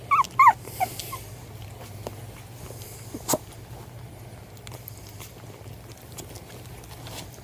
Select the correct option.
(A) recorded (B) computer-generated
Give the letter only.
A